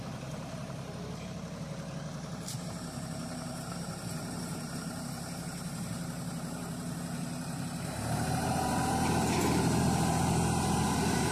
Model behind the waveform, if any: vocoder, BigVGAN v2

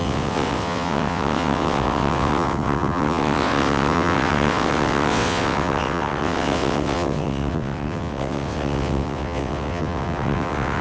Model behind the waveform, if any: vocoder, WaveNeXt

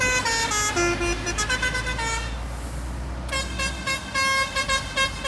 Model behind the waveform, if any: none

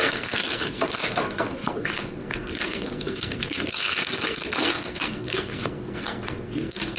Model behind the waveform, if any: codec, SNAC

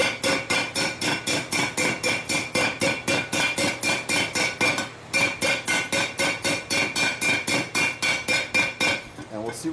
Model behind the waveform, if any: none